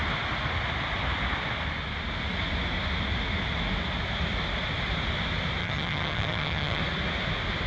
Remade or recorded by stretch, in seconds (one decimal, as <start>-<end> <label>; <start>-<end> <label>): 0.0-5.6 recorded; 5.6-6.8 remade; 6.8-7.7 recorded